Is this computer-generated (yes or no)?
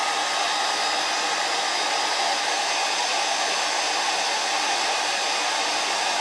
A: no